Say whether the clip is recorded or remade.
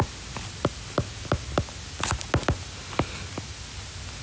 recorded